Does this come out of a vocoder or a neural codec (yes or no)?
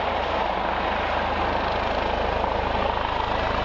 no